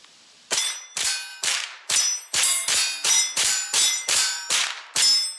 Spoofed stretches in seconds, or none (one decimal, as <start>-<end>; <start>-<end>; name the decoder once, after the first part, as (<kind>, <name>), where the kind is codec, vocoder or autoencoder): 1.3-4.5 (vocoder, BigVGAN v2)